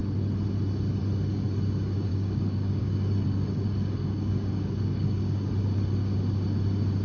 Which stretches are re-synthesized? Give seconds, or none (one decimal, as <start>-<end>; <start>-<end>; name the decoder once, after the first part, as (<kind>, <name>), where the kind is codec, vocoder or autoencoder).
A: 2.1-5.5 (codec, DAC)